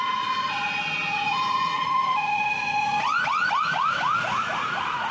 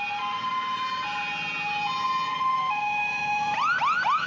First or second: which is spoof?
first